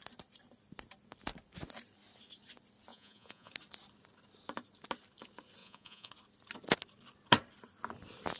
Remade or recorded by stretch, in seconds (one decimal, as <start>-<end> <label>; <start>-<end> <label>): 0.0-2.9 recorded; 2.9-3.5 remade; 3.5-5.6 recorded; 5.6-6.1 remade; 6.1-8.4 recorded